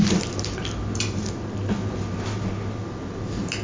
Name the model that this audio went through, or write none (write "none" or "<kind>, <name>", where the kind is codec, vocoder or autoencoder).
none